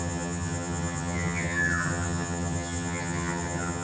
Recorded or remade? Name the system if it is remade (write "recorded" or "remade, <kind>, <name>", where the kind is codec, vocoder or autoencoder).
remade, vocoder, HiFi-GAN